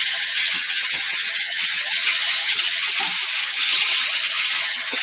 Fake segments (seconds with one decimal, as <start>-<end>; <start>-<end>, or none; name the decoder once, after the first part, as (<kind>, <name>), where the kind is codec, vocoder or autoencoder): 0.0-3.0 (vocoder, HiFi-GAN); 3.4-5.0

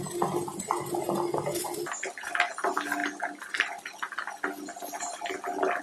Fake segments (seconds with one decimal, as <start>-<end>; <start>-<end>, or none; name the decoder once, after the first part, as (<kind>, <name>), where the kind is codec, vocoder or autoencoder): none

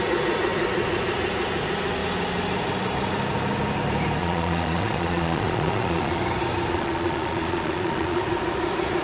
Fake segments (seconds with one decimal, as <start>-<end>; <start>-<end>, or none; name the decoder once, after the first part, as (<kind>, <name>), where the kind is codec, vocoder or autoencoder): 4.2-6.2 (vocoder, Vocos); 6.7-8.2

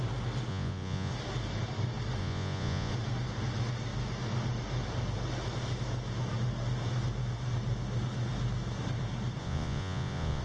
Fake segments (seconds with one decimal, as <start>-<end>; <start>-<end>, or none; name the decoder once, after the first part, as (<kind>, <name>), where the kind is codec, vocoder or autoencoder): 0.5-1.1 (vocoder, Vocos); 2.2-2.9; 9.4-10.4

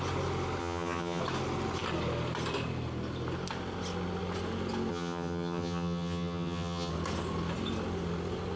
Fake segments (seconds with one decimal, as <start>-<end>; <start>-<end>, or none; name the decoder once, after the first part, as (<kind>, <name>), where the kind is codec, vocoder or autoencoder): 0.6-1.2 (vocoder, HiFi-GAN); 4.9-6.9

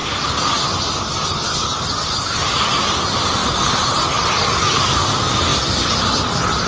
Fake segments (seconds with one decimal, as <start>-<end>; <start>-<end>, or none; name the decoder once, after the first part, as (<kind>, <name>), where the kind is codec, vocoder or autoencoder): none

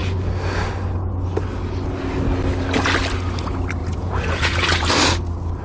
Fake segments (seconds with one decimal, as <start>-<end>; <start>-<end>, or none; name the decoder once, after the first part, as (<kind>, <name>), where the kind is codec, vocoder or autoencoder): 3.8-4.9 (vocoder, Vocos)